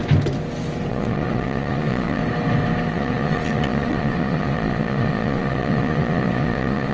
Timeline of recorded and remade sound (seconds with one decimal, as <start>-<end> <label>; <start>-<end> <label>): 0.0-0.9 recorded; 0.9-2.2 remade; 2.2-2.9 recorded; 2.9-6.9 remade